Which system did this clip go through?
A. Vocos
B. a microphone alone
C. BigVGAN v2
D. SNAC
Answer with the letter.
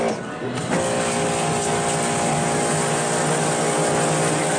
B